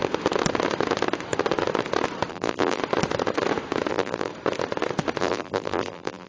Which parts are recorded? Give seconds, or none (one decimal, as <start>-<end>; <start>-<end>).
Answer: 0.0-2.3; 2.8-3.9; 4.3-5.2